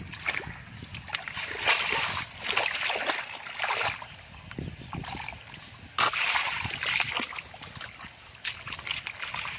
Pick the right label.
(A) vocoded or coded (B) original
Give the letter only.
B